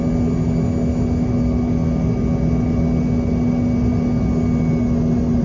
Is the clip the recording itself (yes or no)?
yes